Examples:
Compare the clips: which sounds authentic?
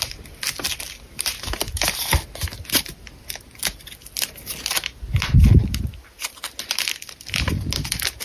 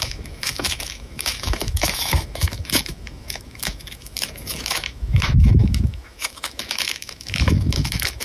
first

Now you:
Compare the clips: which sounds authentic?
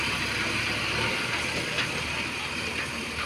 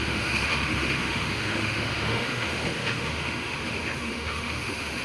first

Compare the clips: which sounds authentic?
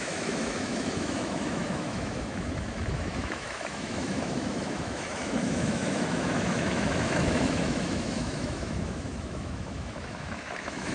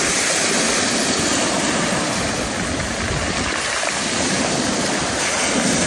second